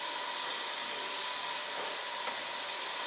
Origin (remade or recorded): remade